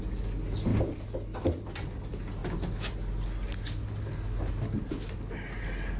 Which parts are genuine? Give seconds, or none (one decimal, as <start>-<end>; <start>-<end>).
0.0-6.0